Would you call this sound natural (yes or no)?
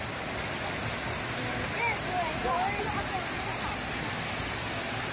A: yes